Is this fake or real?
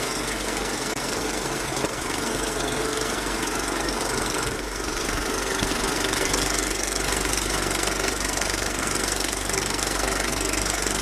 fake